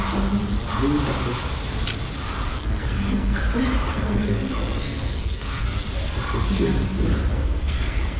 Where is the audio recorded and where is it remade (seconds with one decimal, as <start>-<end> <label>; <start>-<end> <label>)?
0.0-2.5 recorded; 2.5-3.4 remade; 3.4-3.9 recorded; 3.9-5.9 remade; 5.9-7.3 recorded; 7.3-8.2 remade